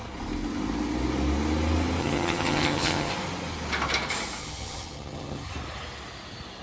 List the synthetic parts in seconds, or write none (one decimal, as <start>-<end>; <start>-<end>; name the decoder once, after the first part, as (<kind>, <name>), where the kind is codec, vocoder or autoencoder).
2.0-3.1 (vocoder, HiFi-GAN); 4.4-5.5